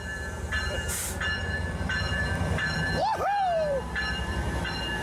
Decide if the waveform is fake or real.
fake